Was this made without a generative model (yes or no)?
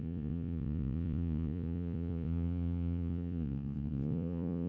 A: no